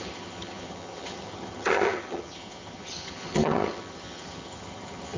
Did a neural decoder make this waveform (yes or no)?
yes